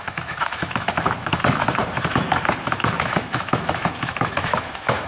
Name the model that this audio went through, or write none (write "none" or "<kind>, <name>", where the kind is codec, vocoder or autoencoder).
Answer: autoencoder, DAC-VAE